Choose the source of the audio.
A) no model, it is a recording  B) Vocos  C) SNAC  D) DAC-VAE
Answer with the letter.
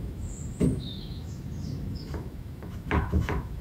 D